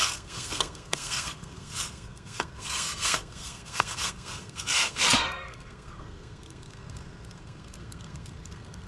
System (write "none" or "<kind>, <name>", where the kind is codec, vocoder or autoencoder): codec, SNAC